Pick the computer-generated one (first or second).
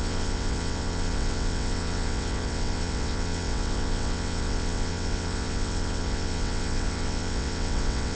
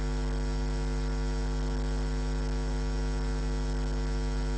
first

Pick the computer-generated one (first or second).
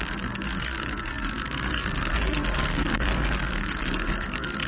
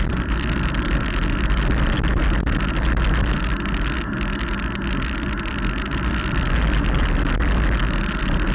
first